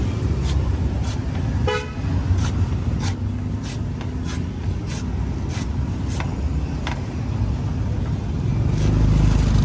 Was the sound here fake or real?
real